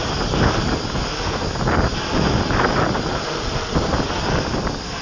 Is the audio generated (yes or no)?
no